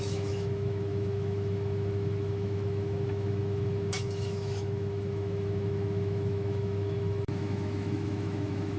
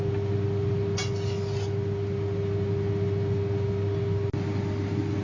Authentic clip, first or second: second